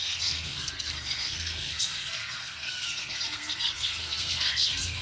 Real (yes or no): no